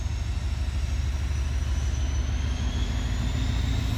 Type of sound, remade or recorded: recorded